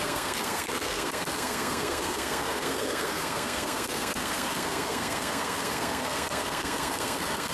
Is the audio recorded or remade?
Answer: remade